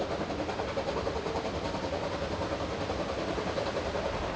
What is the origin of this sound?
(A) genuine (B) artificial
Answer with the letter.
A